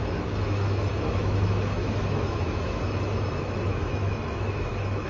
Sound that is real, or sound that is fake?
fake